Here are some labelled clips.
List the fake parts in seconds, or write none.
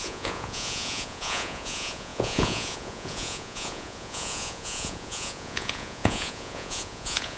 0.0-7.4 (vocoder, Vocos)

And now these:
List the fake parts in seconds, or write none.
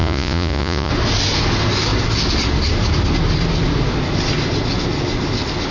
0.0-0.9 (vocoder, Vocos)